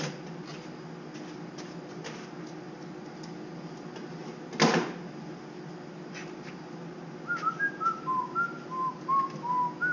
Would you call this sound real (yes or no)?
yes